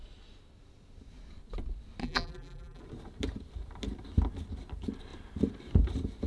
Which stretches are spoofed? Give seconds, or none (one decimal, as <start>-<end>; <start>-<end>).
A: 2.0-2.8